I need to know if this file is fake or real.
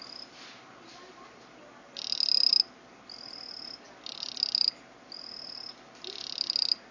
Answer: real